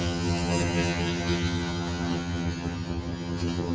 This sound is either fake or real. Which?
fake